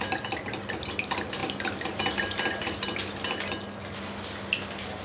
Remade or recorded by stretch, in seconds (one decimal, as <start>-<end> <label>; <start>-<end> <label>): 0.0-5.0 recorded